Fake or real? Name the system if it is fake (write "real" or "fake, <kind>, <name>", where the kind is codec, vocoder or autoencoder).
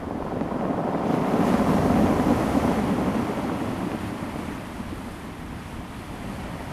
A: real